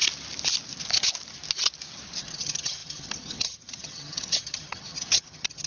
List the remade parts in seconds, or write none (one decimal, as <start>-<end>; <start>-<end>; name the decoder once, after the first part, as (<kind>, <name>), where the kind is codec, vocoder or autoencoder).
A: 2.2-5.7 (vocoder, HiFi-GAN)